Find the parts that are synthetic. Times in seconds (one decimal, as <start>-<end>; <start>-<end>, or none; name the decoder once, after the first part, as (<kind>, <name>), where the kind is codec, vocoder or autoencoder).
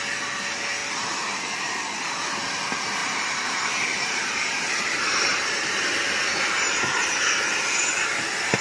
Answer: 0.8-2.4 (vocoder, BigVGAN v2); 3.0-7.2